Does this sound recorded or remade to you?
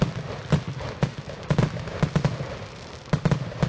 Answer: recorded